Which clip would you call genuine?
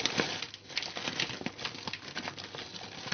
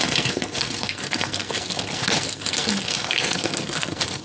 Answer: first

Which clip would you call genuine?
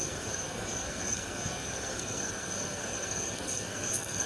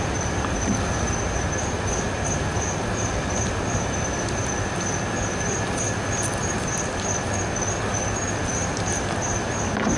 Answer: second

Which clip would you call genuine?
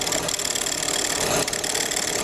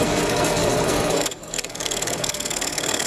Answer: first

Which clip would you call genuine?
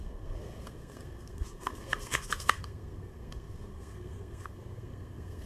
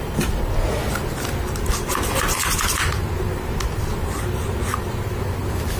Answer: second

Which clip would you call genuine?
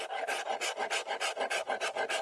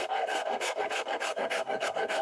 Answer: first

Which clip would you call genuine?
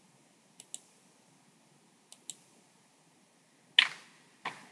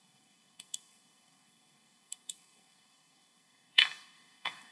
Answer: first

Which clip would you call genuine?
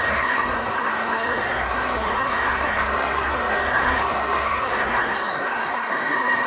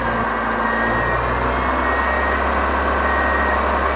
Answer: second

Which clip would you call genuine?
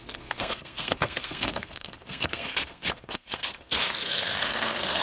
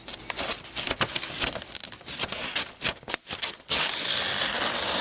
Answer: second